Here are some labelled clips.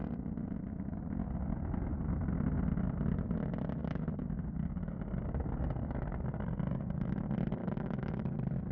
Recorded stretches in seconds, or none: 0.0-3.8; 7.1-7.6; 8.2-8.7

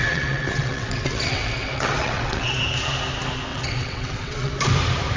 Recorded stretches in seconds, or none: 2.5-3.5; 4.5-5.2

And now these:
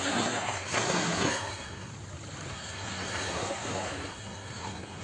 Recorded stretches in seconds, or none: 1.9-2.5

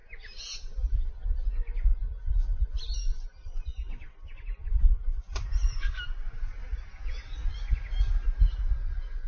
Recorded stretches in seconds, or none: 0.0-9.3

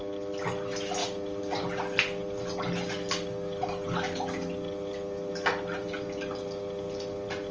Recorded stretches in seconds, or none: 0.0-7.5